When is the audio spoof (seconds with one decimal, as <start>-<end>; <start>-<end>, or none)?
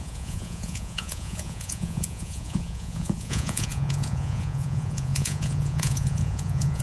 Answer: 0.0-6.8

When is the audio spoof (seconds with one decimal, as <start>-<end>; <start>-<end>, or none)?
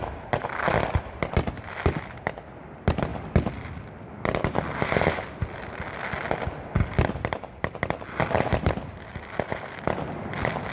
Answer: none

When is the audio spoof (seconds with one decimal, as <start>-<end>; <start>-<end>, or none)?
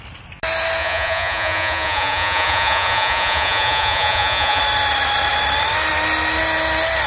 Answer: 0.8-4.6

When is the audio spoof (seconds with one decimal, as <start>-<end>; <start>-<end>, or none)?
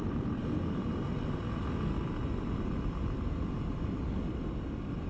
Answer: none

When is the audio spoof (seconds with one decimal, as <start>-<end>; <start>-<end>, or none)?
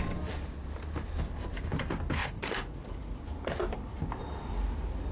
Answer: 2.2-3.2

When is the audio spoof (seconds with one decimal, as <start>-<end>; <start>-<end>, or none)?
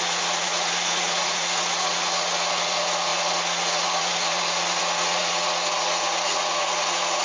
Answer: 0.0-7.2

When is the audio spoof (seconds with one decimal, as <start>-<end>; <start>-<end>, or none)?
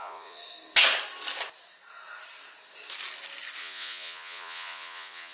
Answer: 0.0-0.4; 3.6-5.3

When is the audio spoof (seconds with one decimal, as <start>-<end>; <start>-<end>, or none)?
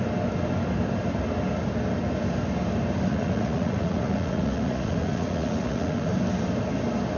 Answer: 3.1-6.1